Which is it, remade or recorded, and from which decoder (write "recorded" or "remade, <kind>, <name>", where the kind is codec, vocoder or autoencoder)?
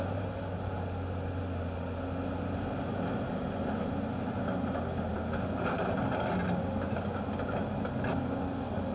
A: recorded